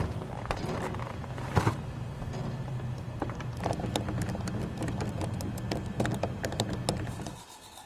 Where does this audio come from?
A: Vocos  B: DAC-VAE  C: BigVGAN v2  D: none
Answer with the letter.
D